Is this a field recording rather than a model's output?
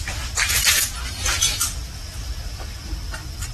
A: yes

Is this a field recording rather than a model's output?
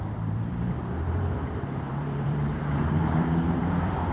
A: no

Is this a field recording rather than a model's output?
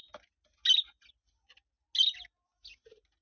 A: yes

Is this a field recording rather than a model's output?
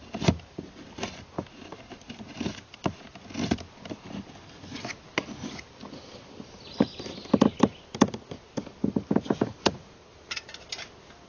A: yes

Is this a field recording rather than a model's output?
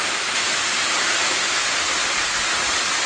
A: yes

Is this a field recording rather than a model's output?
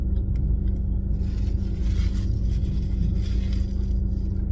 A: yes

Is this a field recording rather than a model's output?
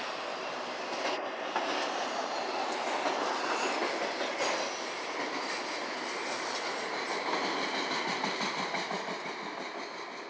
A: yes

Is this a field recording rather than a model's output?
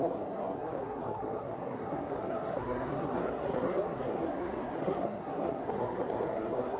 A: no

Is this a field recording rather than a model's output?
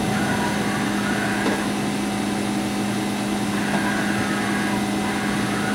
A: yes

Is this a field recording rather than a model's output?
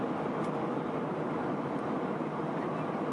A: yes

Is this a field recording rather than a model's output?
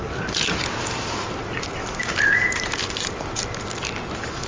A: yes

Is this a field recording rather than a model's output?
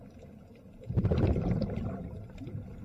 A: yes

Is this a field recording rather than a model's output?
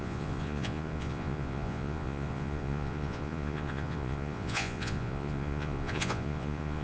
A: no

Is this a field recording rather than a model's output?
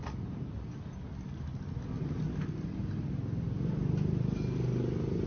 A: yes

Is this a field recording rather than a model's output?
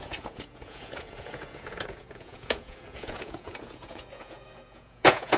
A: no